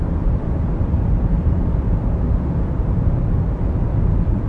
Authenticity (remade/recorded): remade